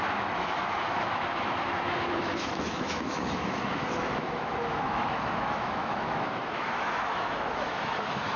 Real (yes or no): no